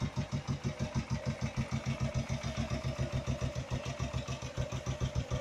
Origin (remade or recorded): recorded